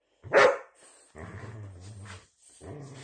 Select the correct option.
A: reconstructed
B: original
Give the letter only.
B